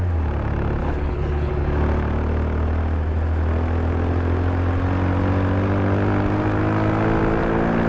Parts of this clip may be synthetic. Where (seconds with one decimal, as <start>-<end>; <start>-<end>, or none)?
0.8-1.5